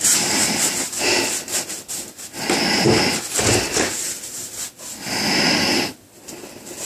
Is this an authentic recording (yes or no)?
yes